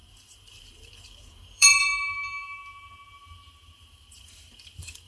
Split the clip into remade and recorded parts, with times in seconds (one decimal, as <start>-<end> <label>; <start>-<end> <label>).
0.0-1.9 remade; 1.9-3.1 recorded; 3.1-5.1 remade